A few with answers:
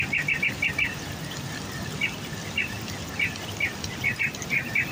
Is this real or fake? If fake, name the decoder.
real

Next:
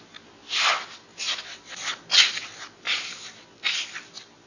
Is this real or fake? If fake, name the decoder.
real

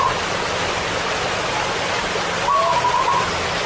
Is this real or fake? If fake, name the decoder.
real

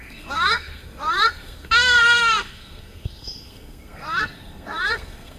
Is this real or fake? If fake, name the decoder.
fake, codec, SNAC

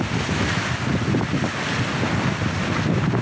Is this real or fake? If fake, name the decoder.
real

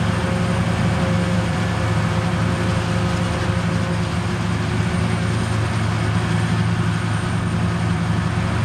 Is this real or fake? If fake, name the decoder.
real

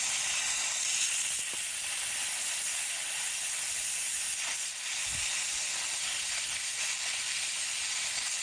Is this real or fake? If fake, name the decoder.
real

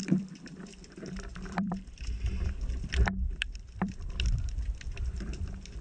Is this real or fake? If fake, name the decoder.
fake, vocoder, BigVGAN v2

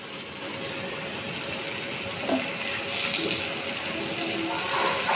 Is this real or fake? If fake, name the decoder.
real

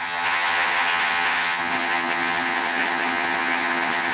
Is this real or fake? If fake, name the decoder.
fake, vocoder, HiFi-GAN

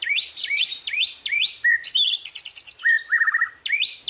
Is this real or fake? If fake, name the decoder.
real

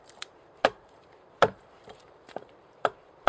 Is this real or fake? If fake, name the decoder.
fake, vocoder, BigVGAN v2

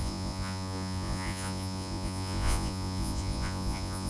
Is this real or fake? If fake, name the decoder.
fake, vocoder, Vocos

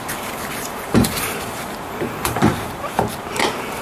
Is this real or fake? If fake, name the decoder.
fake, vocoder, BigVGAN v2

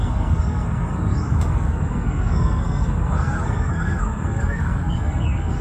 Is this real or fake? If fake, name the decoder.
fake, codec, SNAC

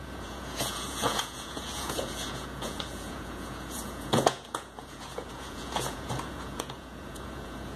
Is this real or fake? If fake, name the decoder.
fake, vocoder, Vocos